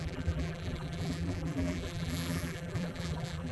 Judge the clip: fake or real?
fake